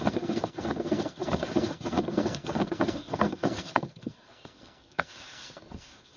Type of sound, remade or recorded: remade